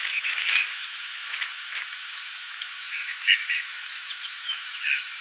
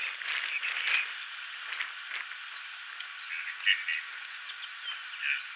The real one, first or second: second